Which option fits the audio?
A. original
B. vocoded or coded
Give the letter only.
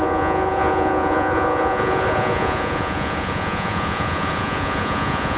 B